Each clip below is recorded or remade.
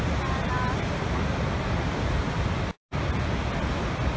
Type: recorded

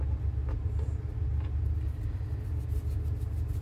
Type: recorded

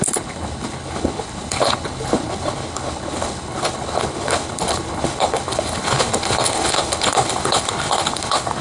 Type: remade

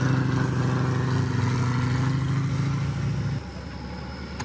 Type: recorded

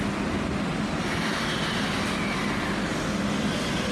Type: recorded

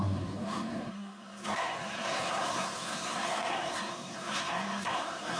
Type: remade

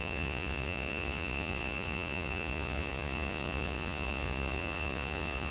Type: remade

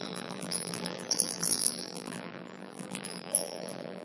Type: remade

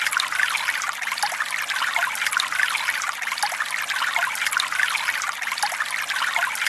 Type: recorded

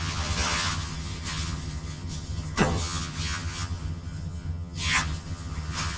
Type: remade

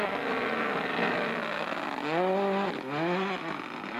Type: recorded